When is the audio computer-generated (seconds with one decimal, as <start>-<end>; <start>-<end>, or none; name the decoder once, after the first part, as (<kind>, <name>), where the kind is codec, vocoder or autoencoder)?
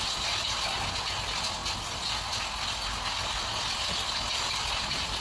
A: none